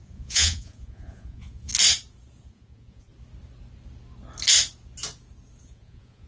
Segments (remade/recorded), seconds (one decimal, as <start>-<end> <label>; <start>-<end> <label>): 0.0-1.7 remade; 1.7-2.4 recorded; 2.4-3.1 remade; 3.1-5.6 recorded; 5.6-6.3 remade